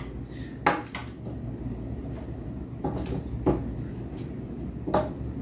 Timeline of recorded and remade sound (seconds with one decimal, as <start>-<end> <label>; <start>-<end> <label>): 0.0-5.4 recorded